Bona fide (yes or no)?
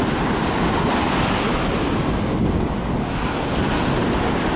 yes